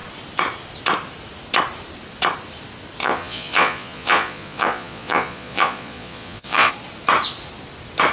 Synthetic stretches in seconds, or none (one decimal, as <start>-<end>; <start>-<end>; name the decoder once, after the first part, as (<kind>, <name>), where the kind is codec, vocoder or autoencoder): 3.0-6.7 (vocoder, Vocos)